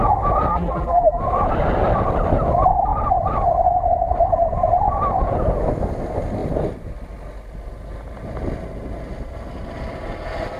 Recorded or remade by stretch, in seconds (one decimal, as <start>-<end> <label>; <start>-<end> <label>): 0.0-0.5 recorded; 0.5-1.2 remade; 1.2-10.6 recorded